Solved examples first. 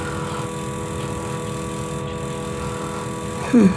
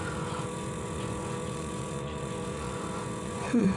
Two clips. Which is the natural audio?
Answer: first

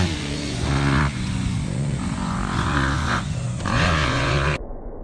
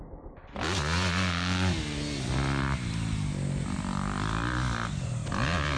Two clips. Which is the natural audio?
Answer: second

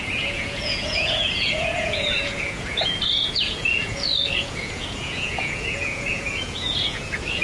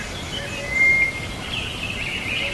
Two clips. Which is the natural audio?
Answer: second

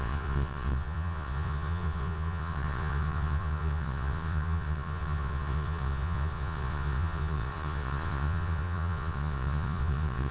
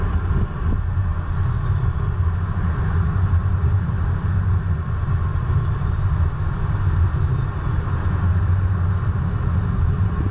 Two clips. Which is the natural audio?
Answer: second